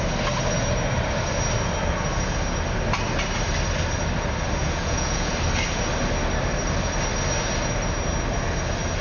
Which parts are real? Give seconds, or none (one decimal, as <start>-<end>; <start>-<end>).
0.0-4.6; 5.3-9.0